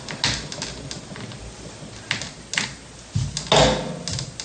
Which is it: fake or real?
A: real